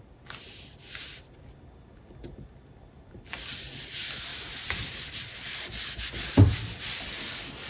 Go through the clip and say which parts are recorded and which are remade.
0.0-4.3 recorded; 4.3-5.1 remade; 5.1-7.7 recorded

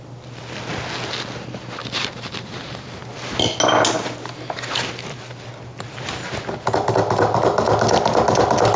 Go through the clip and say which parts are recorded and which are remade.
0.0-1.8 recorded; 1.8-3.0 remade; 3.0-8.8 recorded

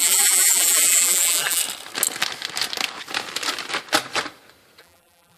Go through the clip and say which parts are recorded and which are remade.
0.0-1.6 remade; 1.6-4.8 recorded; 4.8-5.4 remade

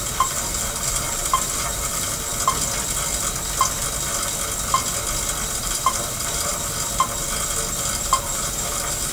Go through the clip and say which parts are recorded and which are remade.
0.0-2.3 remade; 2.3-5.6 recorded; 5.6-6.5 remade; 6.5-7.9 recorded; 7.9-9.1 remade

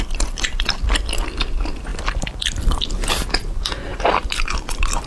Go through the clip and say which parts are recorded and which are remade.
0.0-3.9 recorded; 3.9-5.1 remade

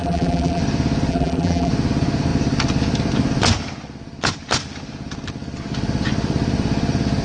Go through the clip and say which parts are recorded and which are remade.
0.0-0.6 remade; 0.6-1.1 recorded; 1.1-1.7 remade; 1.7-7.2 recorded

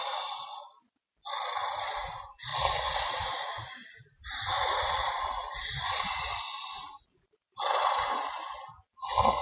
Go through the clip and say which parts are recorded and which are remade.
0.0-2.5 recorded; 2.5-6.4 remade; 6.4-9.4 recorded